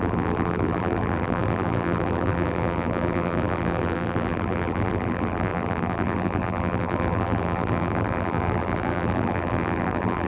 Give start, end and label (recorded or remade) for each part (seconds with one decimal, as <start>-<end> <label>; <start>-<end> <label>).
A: 0.0-10.3 remade